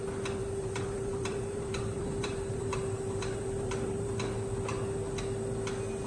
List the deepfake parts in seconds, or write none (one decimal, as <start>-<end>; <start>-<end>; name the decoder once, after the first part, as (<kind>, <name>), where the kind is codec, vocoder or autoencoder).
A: 0.4-4.1 (vocoder, BigVGAN v2)